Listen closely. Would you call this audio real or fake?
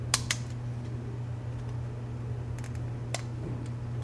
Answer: real